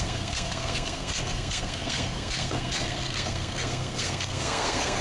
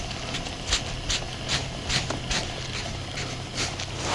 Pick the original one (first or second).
second